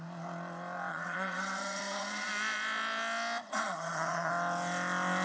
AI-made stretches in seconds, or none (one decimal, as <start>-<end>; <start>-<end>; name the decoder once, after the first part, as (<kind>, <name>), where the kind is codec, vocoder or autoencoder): 0.9-2.3 (vocoder, HiFi-GAN); 3.4-4.3